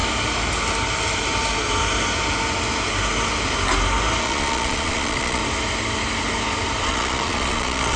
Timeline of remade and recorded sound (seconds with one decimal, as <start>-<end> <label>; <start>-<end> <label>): 0.0-4.2 recorded; 4.2-5.4 remade; 5.4-6.8 recorded; 6.8-8.0 remade

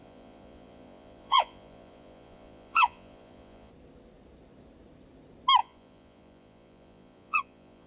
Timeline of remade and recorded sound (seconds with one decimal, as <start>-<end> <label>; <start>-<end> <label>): 0.0-3.7 remade; 3.7-5.6 recorded; 5.6-7.9 remade

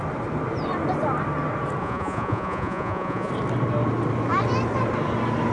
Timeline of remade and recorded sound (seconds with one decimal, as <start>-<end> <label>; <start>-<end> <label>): 0.0-1.8 recorded; 1.8-3.3 remade; 3.3-5.5 recorded

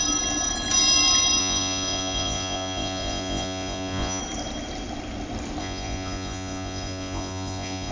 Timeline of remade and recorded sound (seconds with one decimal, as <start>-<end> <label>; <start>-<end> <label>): 0.0-1.4 recorded; 1.4-4.2 remade; 4.2-5.6 recorded; 5.6-7.9 remade

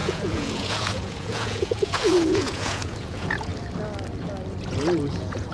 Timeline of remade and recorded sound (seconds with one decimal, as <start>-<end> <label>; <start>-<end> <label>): 0.0-3.5 remade; 3.5-4.7 recorded; 4.7-5.5 remade